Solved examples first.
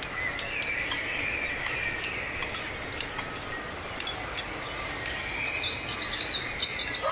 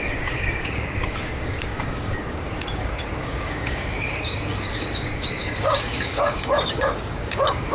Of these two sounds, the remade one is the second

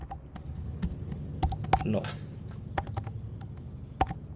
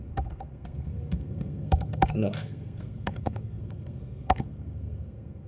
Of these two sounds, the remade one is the second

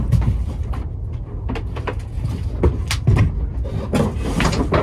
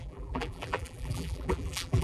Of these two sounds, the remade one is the second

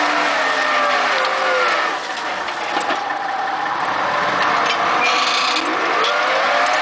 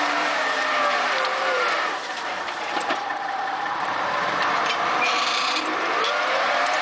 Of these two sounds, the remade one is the second